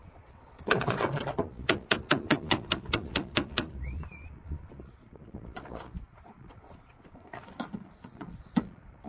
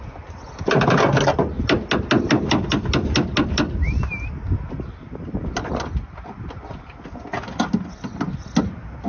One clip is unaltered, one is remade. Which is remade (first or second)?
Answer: first